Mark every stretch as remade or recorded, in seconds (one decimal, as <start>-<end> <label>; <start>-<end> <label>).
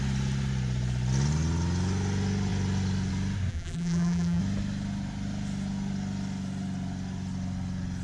0.0-3.5 recorded; 3.5-4.4 remade; 4.4-8.0 recorded